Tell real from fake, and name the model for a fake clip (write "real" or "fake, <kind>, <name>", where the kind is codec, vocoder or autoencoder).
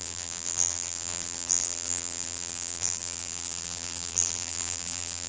fake, vocoder, BigVGAN v2